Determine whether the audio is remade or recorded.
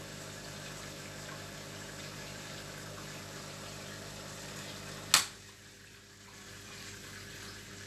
recorded